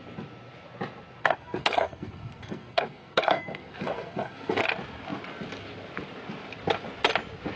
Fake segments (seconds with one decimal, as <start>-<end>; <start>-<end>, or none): 1.2-4.6

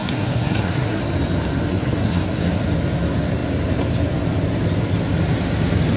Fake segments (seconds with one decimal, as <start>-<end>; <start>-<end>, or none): 0.0-1.0; 1.7-2.6

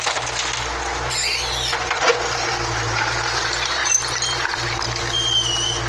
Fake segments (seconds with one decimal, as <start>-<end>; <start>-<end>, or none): 1.2-2.5; 3.8-4.7

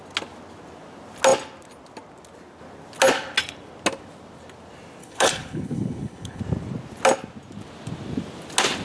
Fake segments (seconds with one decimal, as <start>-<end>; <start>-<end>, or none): 5.0-6.4